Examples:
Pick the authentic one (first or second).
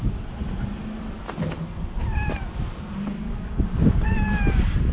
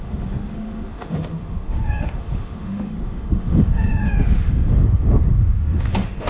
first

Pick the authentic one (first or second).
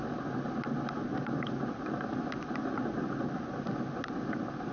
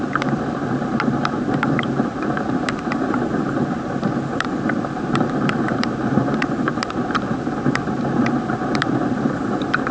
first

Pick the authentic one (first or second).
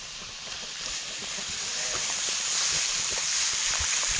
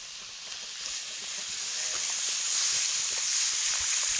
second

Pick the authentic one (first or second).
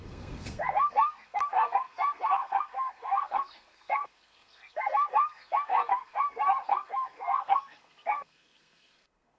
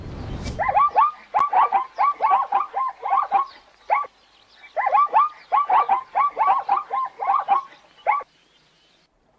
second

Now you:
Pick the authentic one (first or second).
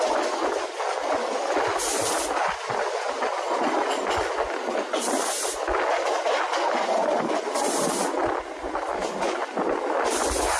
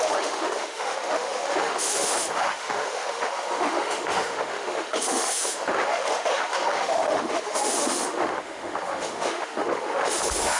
first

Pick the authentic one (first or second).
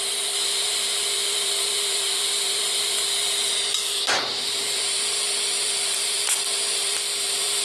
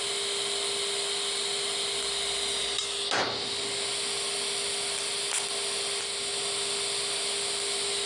second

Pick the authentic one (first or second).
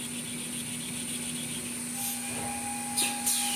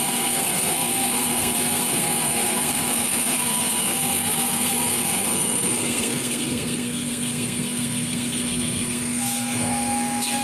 first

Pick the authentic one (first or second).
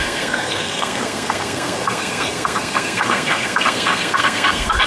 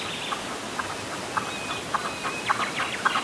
second